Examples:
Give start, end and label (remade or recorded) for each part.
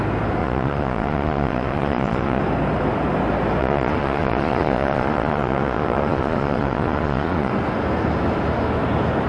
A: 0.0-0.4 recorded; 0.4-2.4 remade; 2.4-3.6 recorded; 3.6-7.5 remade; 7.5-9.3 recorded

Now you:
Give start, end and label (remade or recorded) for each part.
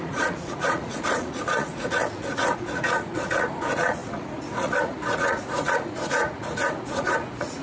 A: 0.0-7.6 remade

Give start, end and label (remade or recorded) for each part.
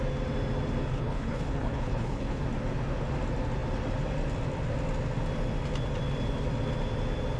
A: 0.0-0.9 recorded; 0.9-2.4 remade; 2.4-7.4 recorded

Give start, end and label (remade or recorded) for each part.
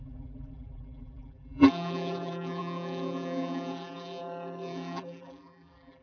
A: 0.0-6.0 remade